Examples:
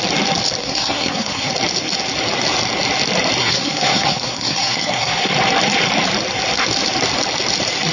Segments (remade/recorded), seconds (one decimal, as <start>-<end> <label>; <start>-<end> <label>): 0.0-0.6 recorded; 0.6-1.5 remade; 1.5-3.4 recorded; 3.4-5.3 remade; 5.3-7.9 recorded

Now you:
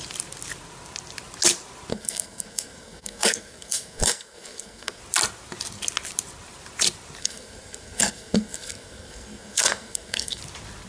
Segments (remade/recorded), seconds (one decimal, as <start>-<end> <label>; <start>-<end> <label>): 0.0-1.9 recorded; 1.9-5.0 remade; 5.0-7.2 recorded; 7.2-10.4 remade; 10.4-10.9 recorded

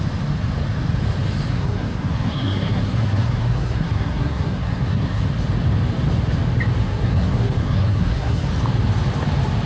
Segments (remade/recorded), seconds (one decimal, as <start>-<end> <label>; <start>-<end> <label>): 0.0-1.5 recorded; 1.5-5.2 remade; 5.2-6.8 recorded; 6.8-8.5 remade; 8.5-9.7 recorded